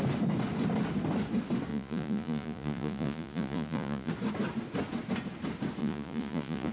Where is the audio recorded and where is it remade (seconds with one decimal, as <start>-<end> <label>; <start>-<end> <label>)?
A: 0.0-1.7 recorded; 1.7-4.1 remade; 4.1-5.8 recorded; 5.8-6.7 remade